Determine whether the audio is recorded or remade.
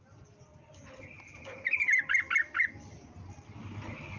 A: recorded